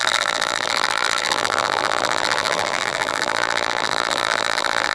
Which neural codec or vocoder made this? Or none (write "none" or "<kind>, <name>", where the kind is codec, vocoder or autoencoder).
vocoder, BigVGAN v2